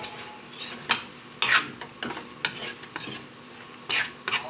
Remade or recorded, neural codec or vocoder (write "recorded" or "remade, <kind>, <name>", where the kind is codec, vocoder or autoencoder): recorded